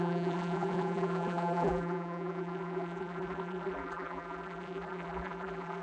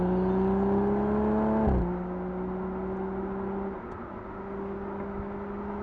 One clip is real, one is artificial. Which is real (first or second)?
second